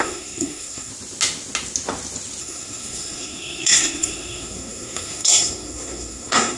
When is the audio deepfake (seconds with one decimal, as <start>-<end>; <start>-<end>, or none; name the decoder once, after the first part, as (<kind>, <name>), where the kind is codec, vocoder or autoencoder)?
0.0-0.9 (codec, SNAC); 2.4-6.6